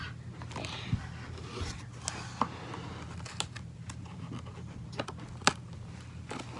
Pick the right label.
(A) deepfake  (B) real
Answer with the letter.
B